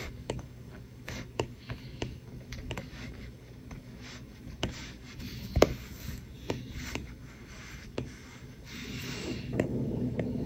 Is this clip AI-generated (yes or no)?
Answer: yes